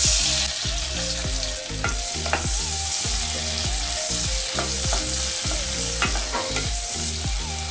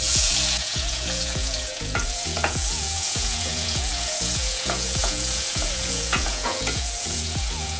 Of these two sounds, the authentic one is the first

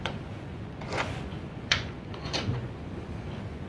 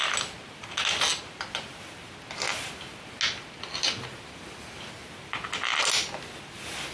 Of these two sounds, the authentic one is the second